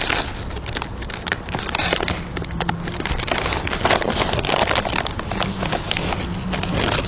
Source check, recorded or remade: recorded